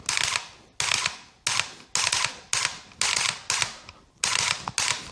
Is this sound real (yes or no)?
yes